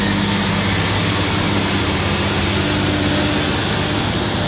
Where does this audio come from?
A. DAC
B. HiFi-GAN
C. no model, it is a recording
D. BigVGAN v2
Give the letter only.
C